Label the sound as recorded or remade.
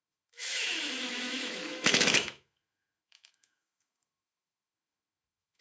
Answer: remade